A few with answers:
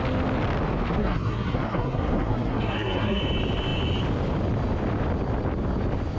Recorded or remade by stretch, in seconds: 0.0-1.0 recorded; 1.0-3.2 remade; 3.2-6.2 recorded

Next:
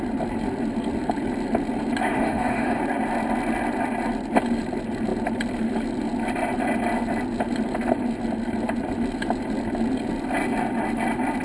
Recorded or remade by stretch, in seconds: 0.0-2.1 recorded; 2.1-2.8 remade; 2.8-11.4 recorded

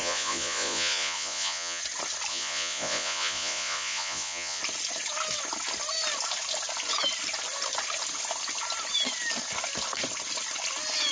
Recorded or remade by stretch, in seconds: 0.0-1.8 remade; 1.8-2.3 recorded; 2.3-4.6 remade; 4.6-11.1 recorded